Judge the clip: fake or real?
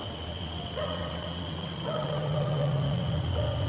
fake